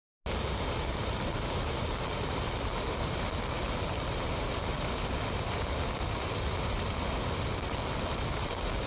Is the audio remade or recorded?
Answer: recorded